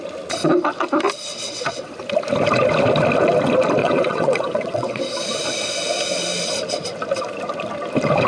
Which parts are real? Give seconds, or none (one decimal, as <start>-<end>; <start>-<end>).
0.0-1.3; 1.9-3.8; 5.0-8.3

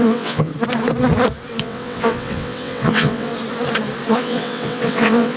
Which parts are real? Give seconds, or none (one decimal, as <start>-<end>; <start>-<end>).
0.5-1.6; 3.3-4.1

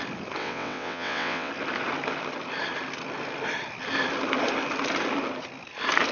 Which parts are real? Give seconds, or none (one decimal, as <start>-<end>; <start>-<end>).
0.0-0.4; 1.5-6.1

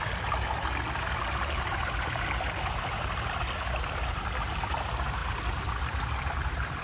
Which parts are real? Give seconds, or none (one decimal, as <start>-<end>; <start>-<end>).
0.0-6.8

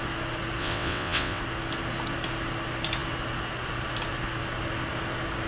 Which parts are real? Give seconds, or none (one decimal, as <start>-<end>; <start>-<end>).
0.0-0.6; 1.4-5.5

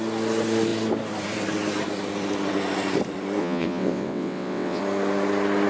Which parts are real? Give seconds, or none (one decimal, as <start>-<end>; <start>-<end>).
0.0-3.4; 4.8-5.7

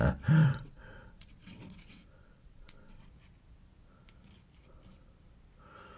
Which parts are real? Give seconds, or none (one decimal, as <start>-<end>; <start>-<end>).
0.0-0.4; 3.1-6.0